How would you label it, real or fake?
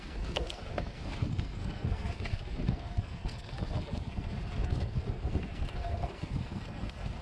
fake